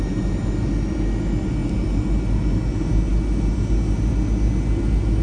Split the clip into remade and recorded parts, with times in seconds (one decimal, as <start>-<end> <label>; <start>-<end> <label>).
0.0-5.2 recorded